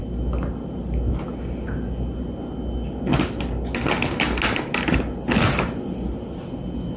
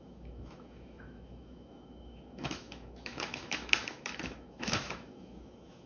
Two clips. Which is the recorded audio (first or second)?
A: first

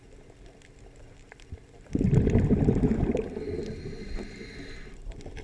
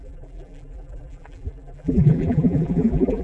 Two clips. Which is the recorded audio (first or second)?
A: first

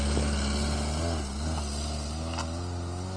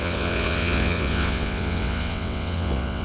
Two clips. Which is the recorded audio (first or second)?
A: first